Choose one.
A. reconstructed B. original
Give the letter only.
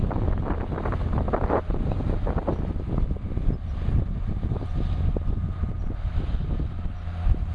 B